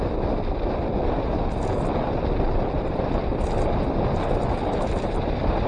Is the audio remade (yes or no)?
no